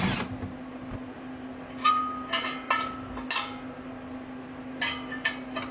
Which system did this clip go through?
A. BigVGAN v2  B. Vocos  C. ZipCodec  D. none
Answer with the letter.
D